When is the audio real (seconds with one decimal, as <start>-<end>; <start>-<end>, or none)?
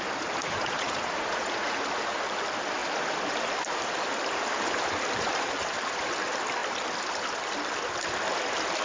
0.0-0.4; 1.8-8.8